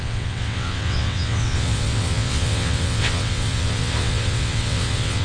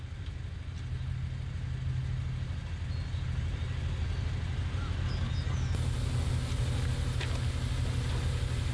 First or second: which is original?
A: second